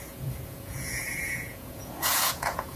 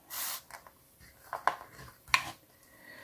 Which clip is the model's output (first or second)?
first